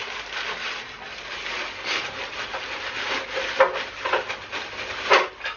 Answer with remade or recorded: recorded